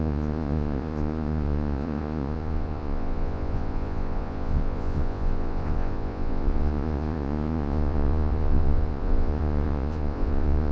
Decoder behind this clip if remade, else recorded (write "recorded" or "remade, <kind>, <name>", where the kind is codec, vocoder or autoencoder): remade, vocoder, Vocos